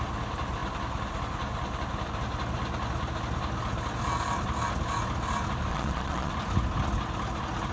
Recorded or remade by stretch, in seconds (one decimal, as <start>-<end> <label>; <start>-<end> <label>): 0.0-5.7 recorded; 5.7-6.3 remade; 6.3-7.7 recorded